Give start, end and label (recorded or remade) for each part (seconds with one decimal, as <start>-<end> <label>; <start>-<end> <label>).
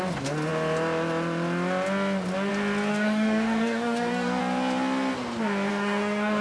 0.0-2.9 recorded; 2.9-4.4 remade; 4.4-5.7 recorded; 5.7-6.4 remade